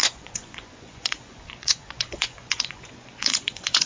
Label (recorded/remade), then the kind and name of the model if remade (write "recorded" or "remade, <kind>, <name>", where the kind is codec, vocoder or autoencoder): remade, vocoder, Vocos